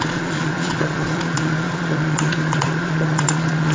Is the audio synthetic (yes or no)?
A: yes